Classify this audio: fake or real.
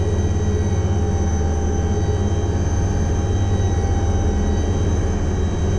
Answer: real